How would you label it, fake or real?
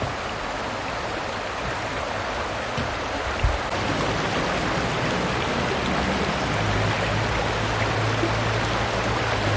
real